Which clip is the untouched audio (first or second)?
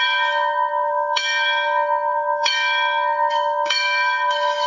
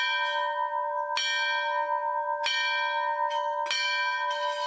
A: second